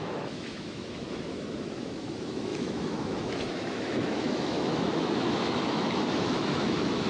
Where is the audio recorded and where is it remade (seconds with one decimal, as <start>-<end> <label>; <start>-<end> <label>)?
0.0-7.1 remade